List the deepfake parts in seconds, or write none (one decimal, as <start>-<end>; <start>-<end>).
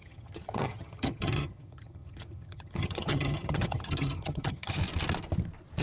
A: 0.0-4.8